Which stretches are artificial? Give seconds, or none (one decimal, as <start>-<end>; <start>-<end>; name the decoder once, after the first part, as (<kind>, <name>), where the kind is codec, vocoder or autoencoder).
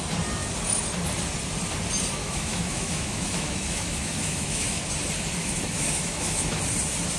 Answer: 2.2-4.8 (autoencoder, DAC-VAE); 5.4-6.6